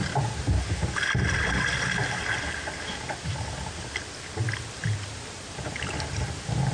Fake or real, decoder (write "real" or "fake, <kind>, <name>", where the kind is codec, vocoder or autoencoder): real